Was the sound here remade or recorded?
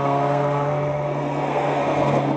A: remade